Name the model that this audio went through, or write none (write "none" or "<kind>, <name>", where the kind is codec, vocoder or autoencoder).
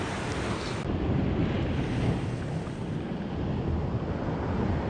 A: none